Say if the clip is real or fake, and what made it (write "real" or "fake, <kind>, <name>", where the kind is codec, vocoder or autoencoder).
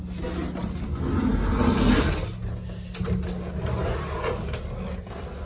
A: real